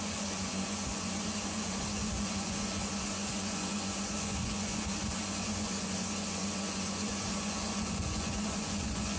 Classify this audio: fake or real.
fake